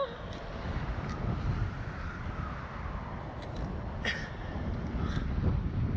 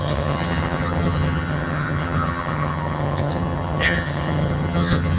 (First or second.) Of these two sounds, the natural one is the first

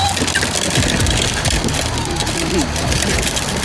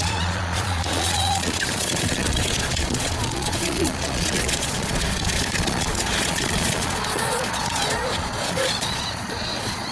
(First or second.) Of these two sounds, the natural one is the first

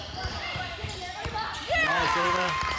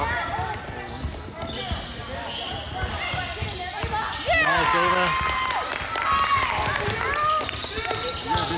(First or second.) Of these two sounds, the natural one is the second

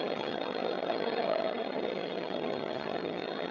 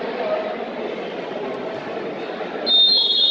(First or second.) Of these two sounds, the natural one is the second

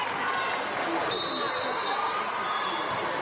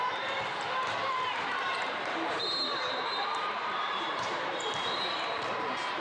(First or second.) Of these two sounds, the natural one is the first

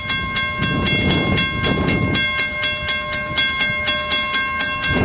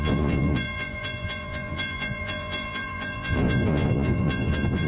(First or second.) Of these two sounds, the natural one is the first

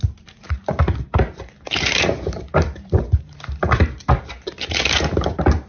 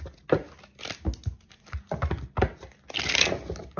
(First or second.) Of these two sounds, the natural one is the second